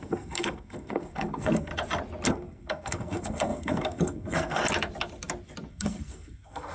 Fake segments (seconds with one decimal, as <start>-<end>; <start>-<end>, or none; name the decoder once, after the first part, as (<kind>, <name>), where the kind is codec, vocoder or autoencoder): 0.0-1.7 (codec, SNAC); 2.3-4.6; 5.7-6.7